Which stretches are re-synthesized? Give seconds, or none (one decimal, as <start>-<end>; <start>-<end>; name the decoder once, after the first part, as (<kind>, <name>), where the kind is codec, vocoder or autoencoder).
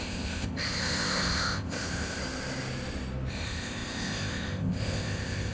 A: 0.0-2.2 (codec, ZipCodec); 3.3-5.5